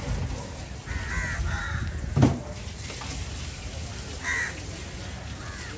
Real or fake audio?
real